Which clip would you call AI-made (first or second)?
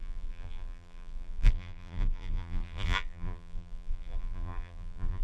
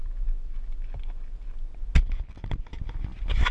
first